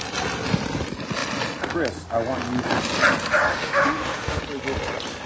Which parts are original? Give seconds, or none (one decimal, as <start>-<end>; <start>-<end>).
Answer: 0.0-3.5; 4.4-5.3